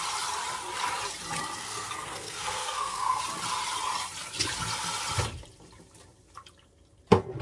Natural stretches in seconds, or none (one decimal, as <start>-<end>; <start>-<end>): 0.0-1.6; 3.2-7.4